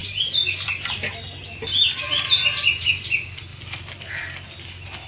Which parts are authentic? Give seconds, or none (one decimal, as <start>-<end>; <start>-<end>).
0.7-5.1

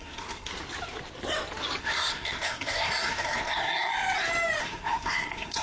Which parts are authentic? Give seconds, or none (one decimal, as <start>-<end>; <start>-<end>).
0.5-1.8; 3.9-4.6

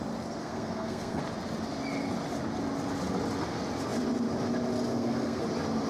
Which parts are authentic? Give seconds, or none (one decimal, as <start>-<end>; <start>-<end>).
0.0-0.4; 1.2-4.9; 5.4-5.9

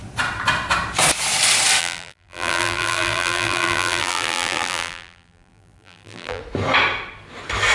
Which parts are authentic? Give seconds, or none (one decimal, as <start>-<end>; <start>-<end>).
0.0-1.8; 6.4-7.7

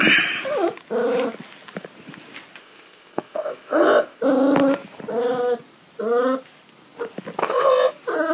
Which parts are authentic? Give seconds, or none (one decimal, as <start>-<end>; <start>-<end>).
0.0-2.6; 4.2-7.4; 7.9-8.3